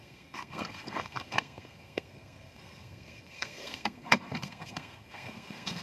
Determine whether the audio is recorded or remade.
remade